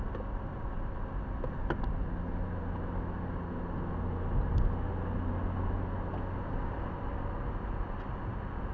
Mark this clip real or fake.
real